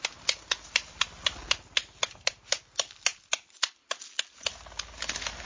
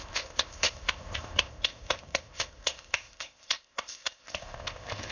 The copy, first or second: second